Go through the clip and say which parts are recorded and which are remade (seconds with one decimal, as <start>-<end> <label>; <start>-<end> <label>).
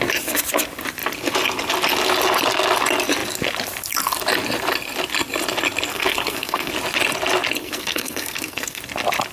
0.0-5.9 recorded; 5.9-6.7 remade; 6.7-7.6 recorded; 7.6-8.8 remade; 8.8-9.3 recorded